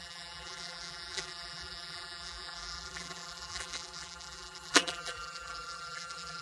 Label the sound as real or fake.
fake